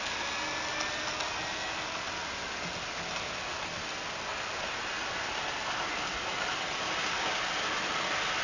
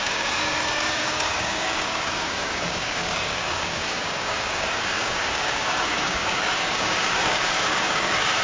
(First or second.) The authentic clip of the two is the first